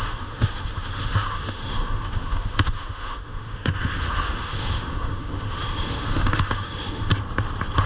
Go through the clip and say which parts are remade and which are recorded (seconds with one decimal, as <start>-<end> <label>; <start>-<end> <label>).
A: 0.0-7.1 remade; 7.1-7.9 recorded